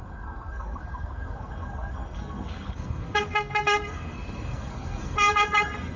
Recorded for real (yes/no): no